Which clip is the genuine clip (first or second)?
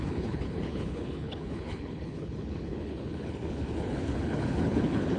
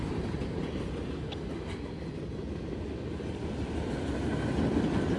second